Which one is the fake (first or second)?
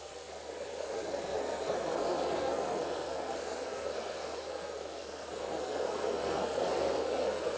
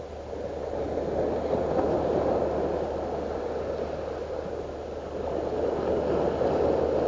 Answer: first